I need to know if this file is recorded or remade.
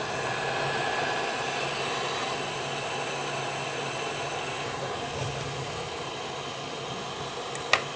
recorded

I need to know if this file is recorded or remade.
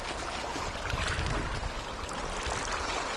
recorded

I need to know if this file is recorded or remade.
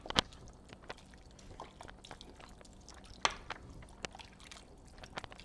recorded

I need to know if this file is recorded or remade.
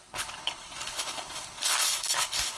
remade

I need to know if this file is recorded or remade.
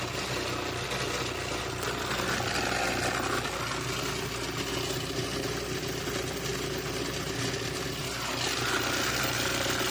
recorded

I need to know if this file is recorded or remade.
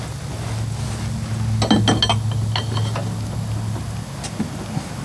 recorded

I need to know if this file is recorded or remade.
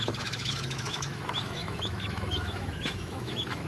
remade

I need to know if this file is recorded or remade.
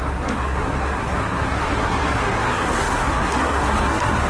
remade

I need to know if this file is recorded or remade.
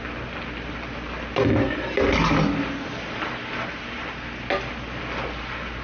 recorded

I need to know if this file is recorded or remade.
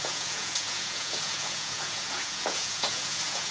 remade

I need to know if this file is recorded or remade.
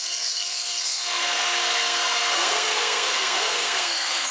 remade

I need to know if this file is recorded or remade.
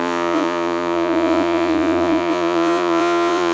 remade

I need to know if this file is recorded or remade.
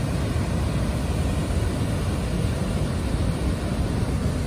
recorded